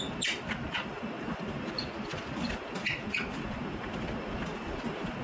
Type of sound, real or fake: real